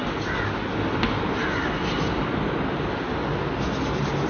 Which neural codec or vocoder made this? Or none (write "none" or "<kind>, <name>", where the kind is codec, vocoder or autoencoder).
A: none